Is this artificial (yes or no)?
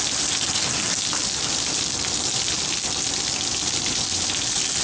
no